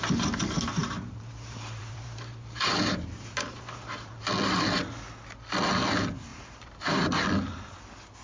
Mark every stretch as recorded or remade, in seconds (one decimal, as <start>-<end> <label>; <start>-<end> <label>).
0.0-0.8 recorded; 0.8-4.2 remade; 4.2-6.3 recorded; 6.3-7.0 remade; 7.0-8.2 recorded